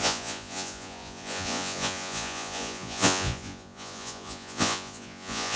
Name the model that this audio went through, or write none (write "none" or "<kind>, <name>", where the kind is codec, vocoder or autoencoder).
vocoder, Vocos